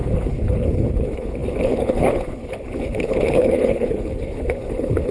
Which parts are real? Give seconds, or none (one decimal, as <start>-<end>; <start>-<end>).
none